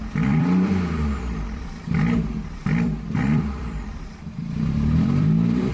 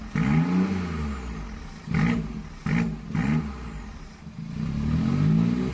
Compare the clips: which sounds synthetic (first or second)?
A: first